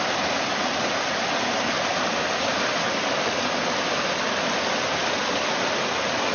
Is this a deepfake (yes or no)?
no